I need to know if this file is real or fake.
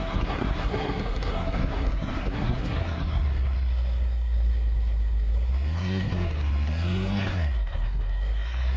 fake